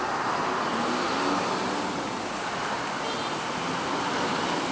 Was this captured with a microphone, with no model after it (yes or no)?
yes